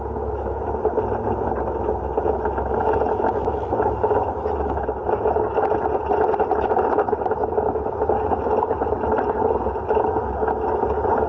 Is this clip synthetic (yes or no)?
no